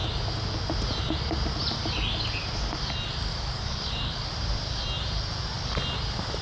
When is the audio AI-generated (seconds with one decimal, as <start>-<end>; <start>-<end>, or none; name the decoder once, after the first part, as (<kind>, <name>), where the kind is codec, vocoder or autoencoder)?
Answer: 3.3-4.3 (codec, DAC)